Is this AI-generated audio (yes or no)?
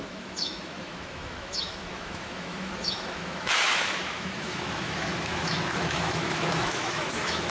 yes